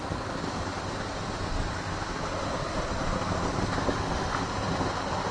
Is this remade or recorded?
recorded